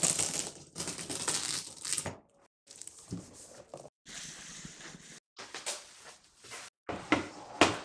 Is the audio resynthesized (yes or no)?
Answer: no